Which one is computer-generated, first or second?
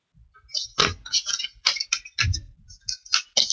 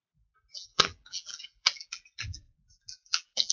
second